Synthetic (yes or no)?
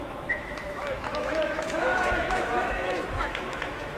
yes